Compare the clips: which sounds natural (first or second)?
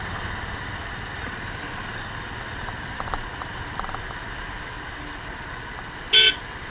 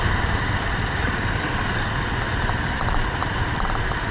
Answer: first